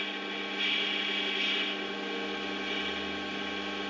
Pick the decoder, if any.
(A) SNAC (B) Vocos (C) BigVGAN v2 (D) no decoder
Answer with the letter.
D